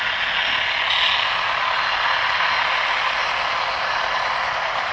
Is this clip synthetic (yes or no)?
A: no